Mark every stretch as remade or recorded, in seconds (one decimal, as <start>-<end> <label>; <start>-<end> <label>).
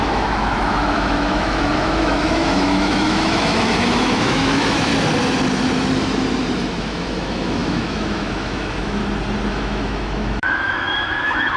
0.0-4.9 remade; 4.9-6.8 recorded; 6.8-9.0 remade; 9.0-9.5 recorded; 9.5-11.6 remade